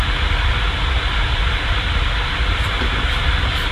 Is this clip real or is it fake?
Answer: real